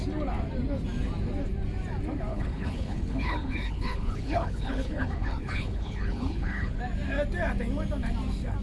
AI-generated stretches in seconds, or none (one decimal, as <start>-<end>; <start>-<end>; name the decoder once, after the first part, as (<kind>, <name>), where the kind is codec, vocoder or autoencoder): 2.3-6.8 (codec, HILCodec)